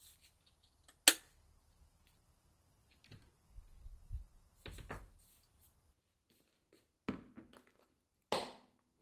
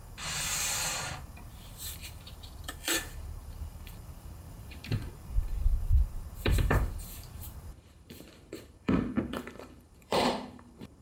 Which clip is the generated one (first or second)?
second